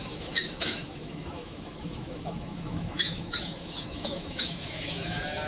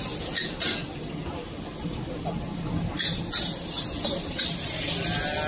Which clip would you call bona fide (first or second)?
second